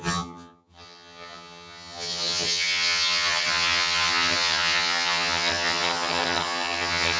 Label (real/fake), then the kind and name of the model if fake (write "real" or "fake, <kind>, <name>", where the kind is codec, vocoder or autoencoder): fake, vocoder, HiFi-GAN